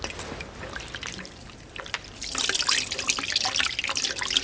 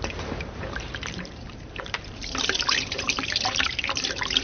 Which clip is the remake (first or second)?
second